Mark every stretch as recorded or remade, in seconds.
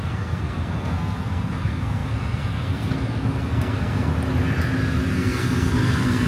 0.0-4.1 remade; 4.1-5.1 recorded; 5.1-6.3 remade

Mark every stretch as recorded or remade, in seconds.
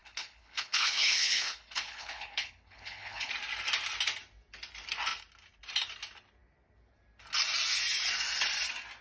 0.0-3.3 remade; 3.3-9.0 recorded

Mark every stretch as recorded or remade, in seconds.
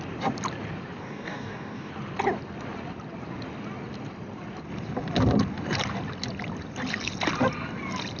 0.0-1.0 recorded; 1.0-1.9 remade; 1.9-8.2 recorded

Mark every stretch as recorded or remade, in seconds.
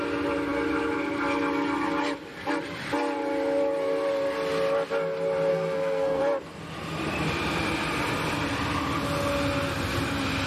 0.0-5.5 recorded; 5.5-6.2 remade; 6.2-10.5 recorded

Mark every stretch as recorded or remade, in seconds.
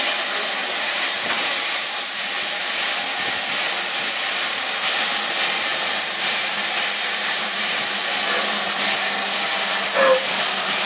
0.0-0.6 recorded; 0.6-2.3 remade; 2.3-5.7 recorded; 5.7-7.9 remade; 7.9-10.9 recorded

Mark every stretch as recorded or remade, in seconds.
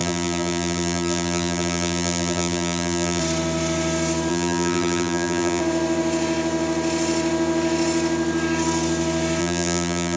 0.0-3.2 remade; 3.2-4.3 recorded; 4.3-5.6 remade; 5.6-9.4 recorded; 9.4-10.2 remade